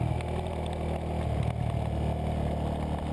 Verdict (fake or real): real